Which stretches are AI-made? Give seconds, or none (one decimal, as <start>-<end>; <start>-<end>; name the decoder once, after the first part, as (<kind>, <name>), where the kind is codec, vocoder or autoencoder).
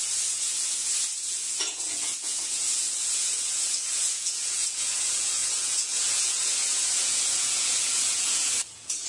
0.0-9.1 (vocoder, Vocos)